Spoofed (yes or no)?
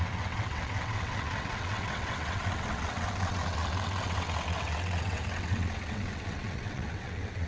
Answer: yes